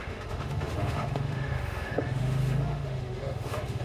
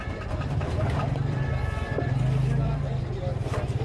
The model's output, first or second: first